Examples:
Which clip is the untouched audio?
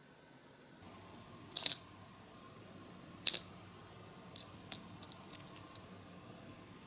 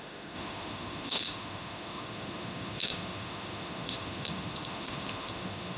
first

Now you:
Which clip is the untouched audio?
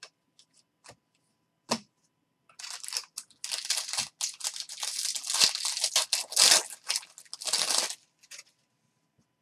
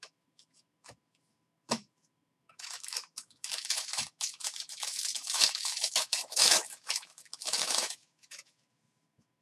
first